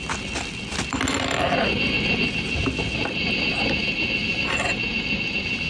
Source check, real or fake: real